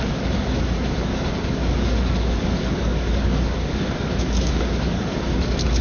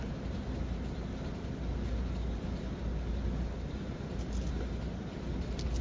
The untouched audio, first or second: second